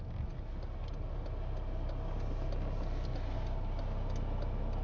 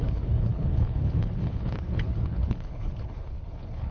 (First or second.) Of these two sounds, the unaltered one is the first